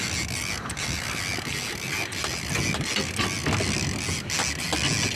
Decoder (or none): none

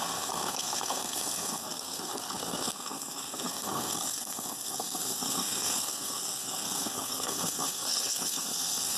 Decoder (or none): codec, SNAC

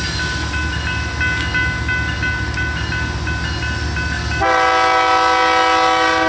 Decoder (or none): none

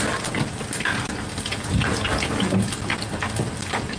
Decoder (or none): none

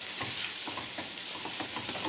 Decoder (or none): vocoder, BigVGAN v2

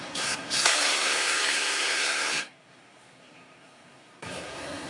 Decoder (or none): codec, SNAC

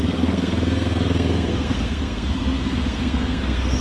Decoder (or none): codec, SNAC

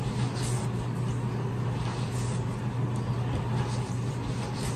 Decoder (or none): none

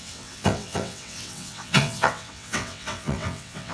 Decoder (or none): vocoder, WaveNeXt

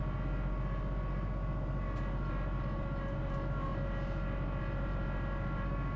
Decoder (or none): none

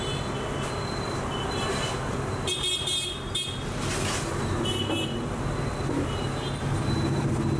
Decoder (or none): none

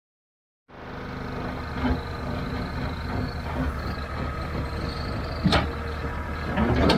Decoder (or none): none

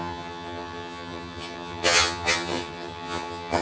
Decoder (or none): vocoder, HiFi-GAN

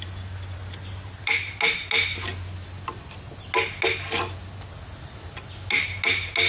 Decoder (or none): none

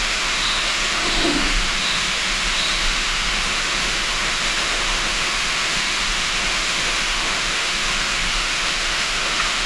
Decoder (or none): autoencoder, DAC-VAE